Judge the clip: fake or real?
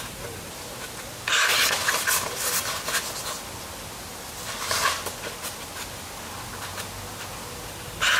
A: real